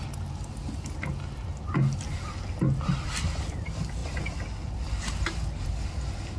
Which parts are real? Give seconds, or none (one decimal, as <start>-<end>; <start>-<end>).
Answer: 0.0-6.4